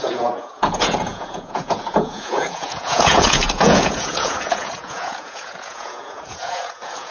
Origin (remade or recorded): remade